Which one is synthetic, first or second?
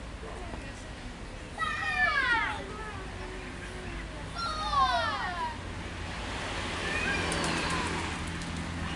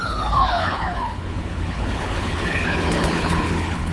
second